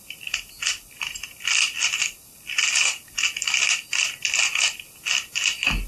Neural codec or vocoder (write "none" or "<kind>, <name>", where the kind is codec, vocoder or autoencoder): none